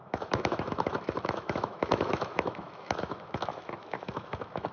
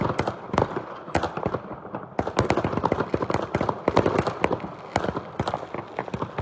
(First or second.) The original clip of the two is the second